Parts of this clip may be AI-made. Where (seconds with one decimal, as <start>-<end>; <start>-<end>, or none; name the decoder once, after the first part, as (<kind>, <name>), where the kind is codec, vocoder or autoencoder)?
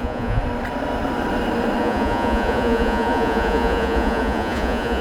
0.0-0.4 (vocoder, Vocos); 1.8-5.0